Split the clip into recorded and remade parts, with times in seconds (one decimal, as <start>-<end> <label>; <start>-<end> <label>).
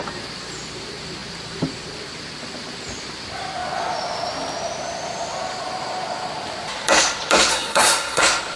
0.0-7.5 recorded; 7.5-8.2 remade; 8.2-8.6 recorded